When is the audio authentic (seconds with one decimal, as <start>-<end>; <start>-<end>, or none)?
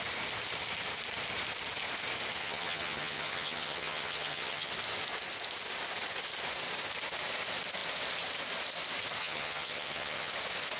0.0-2.4; 4.7-9.2; 10.3-10.8